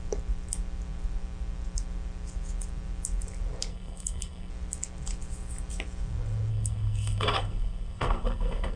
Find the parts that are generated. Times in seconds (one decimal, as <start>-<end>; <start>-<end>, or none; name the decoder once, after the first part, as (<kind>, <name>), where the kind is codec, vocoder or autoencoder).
3.7-4.5 (codec, SNAC); 6.5-8.8